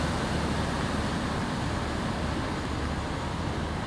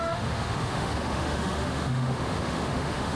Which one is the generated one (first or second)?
second